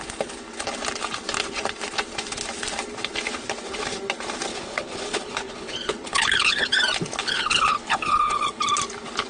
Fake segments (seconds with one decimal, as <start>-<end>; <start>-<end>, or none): 4.5-6.7; 7.2-8.6